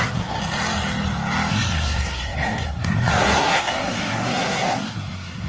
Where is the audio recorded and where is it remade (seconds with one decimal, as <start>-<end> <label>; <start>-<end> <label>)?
0.0-0.4 remade; 0.4-1.5 recorded; 1.5-5.5 remade